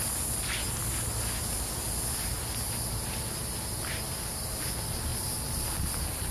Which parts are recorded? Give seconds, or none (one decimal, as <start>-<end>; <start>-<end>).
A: 0.0-5.1